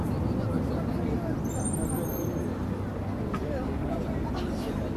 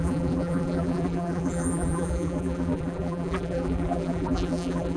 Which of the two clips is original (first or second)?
first